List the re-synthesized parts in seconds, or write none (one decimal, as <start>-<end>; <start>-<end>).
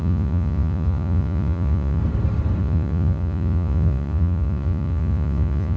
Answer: 0.0-2.0; 2.6-5.8